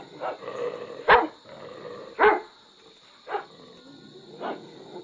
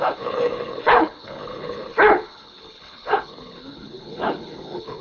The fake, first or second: second